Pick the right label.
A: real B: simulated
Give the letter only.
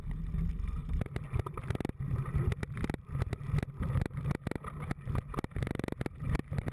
A